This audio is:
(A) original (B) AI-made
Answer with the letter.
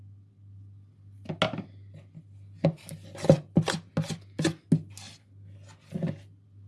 A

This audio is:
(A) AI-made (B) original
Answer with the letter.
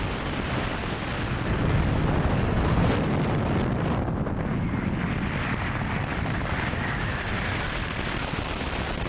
B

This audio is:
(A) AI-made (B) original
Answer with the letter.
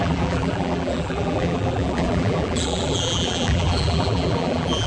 A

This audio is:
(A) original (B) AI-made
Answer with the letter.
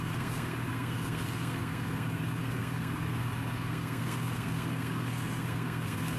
B